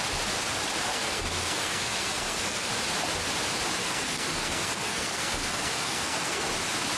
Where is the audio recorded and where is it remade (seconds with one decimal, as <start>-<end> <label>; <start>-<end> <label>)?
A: 0.0-0.9 recorded; 0.9-2.7 remade; 2.7-3.8 recorded; 3.8-6.5 remade; 6.5-7.0 recorded